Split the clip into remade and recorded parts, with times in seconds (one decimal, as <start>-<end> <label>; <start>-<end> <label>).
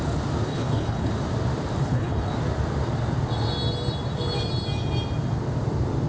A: 0.0-0.5 recorded; 0.5-1.1 remade; 1.1-1.8 recorded; 1.8-2.3 remade; 2.3-6.1 recorded